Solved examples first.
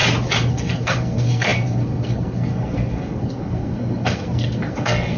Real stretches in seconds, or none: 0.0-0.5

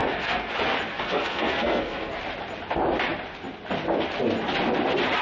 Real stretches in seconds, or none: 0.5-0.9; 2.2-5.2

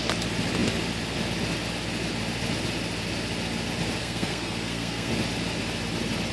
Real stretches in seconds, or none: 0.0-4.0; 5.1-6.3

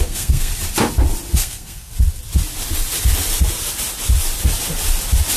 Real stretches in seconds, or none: 0.5-1.4; 1.9-5.4